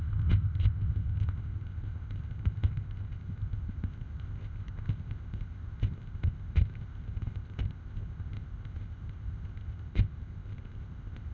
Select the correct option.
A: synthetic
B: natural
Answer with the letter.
A